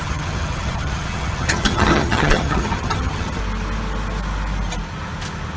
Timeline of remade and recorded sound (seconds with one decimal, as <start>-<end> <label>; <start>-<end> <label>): 0.0-3.4 remade; 3.4-5.6 recorded

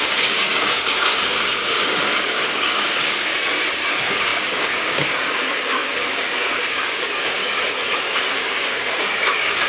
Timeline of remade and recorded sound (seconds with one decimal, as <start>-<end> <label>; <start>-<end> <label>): 0.0-3.3 remade; 3.3-3.9 recorded; 3.9-7.4 remade; 7.4-8.0 recorded; 8.0-9.7 remade

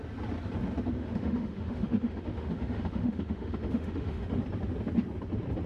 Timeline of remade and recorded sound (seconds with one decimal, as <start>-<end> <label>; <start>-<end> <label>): 0.0-1.0 recorded; 1.0-4.4 remade; 4.4-5.7 recorded

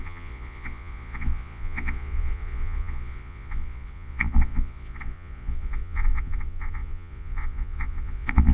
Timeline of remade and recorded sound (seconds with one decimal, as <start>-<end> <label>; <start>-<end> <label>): 0.0-8.5 remade

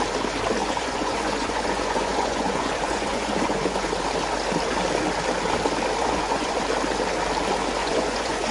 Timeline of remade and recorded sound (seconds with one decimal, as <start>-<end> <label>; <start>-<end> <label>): 0.0-0.6 recorded; 0.6-4.0 remade; 4.0-6.0 recorded; 6.0-6.6 remade; 6.6-7.8 recorded; 7.8-8.5 remade

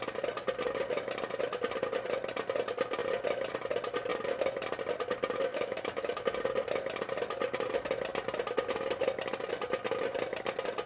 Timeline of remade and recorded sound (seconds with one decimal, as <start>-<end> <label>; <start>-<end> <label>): 0.0-5.5 recorded; 5.5-6.2 remade; 6.2-10.9 recorded

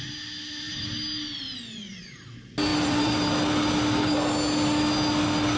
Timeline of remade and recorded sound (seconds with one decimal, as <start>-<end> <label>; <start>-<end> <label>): 0.0-2.7 recorded; 2.7-3.3 remade; 3.3-5.6 recorded